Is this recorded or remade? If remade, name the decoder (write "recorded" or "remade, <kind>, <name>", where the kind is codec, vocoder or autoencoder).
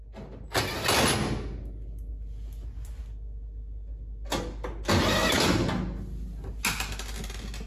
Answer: recorded